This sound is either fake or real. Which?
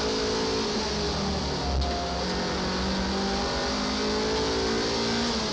real